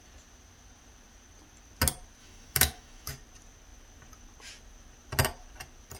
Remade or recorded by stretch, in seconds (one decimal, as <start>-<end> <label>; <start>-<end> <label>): 0.0-2.2 recorded; 2.2-3.1 remade; 3.1-6.0 recorded